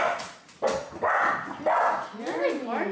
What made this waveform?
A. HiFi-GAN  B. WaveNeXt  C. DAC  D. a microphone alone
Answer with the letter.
D